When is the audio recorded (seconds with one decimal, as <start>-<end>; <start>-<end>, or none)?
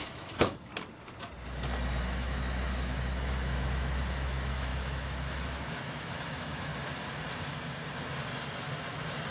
0.7-2.0; 6.7-9.3